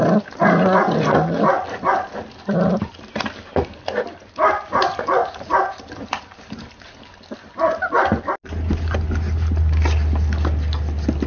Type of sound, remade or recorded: recorded